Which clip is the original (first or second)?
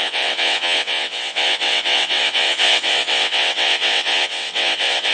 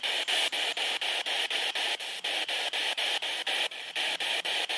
second